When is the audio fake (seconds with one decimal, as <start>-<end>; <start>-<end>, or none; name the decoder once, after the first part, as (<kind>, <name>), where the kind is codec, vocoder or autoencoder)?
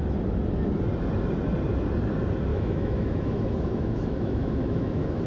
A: 2.5-5.3 (autoencoder, DAC-VAE)